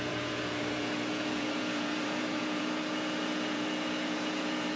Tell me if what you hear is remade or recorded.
remade